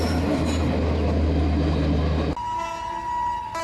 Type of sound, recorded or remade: recorded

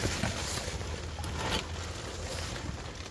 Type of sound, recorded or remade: recorded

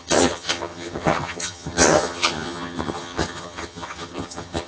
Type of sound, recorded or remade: remade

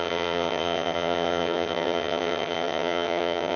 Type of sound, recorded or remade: remade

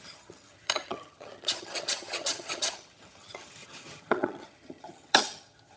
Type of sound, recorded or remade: remade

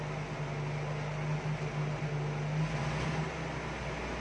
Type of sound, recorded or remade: recorded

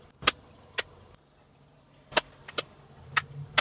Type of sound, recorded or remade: recorded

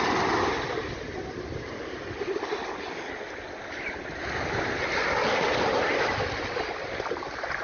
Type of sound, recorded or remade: recorded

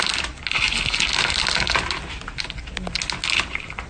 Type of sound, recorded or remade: recorded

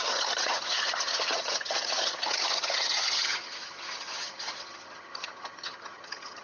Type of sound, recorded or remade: remade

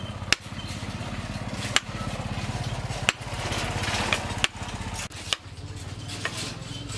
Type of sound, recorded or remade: recorded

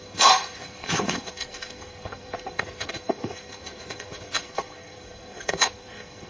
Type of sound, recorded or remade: remade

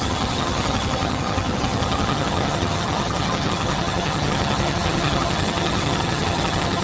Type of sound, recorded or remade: remade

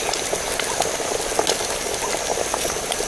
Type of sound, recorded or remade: recorded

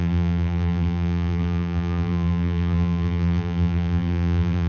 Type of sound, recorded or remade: remade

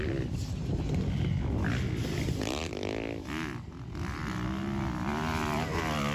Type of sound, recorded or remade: recorded